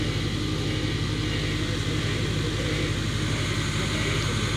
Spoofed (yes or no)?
no